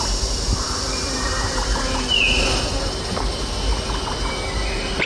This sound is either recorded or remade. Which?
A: recorded